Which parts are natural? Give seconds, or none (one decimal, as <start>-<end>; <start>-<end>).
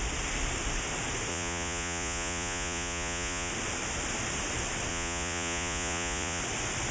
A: 0.0-1.3; 3.5-4.9; 6.4-6.9